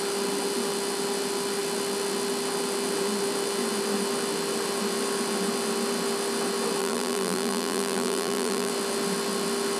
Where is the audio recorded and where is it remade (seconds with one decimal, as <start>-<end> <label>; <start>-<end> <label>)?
0.0-6.8 recorded; 6.8-8.7 remade; 8.7-9.8 recorded